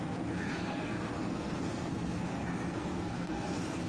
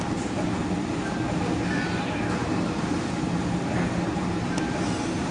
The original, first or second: second